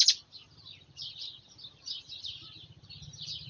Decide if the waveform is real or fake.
fake